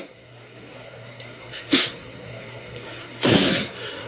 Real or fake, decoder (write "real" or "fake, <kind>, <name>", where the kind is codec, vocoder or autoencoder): fake, codec, SNAC